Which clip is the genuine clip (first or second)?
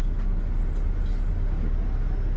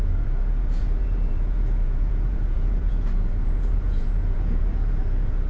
first